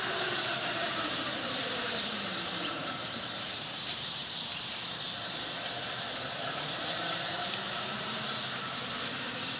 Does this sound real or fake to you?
fake